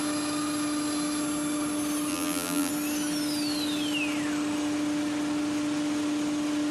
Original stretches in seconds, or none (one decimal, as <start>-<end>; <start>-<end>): 0.0-2.1; 2.7-6.7